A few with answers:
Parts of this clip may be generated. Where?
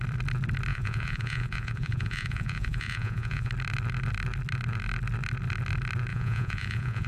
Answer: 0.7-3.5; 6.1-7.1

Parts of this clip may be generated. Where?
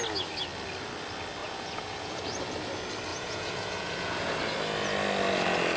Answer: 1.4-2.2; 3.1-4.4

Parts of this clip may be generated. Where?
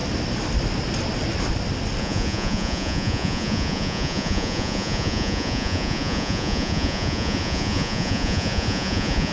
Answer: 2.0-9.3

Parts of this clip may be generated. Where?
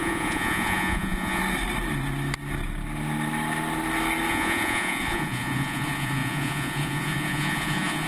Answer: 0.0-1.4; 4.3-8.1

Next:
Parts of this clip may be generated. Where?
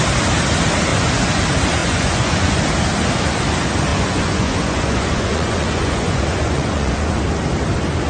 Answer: 0.9-1.4; 1.8-2.6; 3.9-7.2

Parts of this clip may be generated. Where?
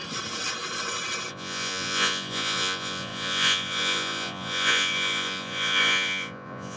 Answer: 1.3-6.8